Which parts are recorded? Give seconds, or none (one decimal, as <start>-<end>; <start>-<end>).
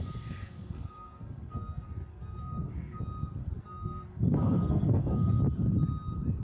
0.0-0.4; 3.0-3.4; 5.4-6.4